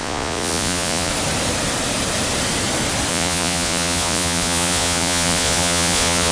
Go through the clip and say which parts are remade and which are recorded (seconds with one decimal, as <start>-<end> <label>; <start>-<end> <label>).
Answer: 0.0-1.1 remade; 1.1-3.1 recorded; 3.1-6.3 remade